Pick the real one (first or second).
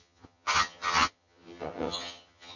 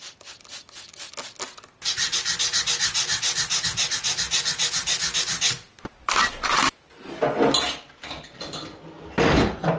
second